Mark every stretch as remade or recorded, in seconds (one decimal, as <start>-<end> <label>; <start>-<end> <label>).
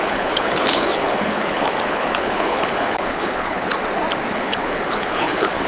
0.0-3.7 remade; 3.7-4.3 recorded; 4.3-5.7 remade